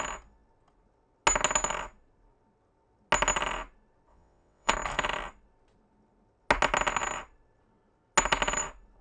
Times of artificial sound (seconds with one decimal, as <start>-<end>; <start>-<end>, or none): 4.1-4.7